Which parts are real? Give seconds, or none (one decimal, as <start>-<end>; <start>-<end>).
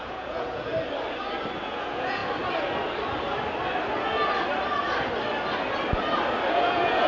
0.7-1.6; 2.2-6.5